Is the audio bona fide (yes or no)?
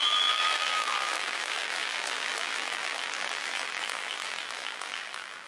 no